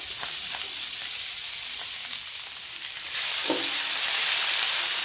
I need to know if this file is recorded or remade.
remade